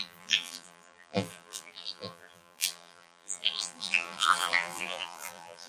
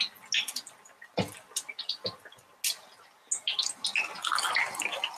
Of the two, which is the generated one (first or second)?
first